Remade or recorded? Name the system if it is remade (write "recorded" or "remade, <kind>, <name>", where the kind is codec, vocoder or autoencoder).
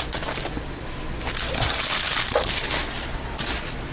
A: recorded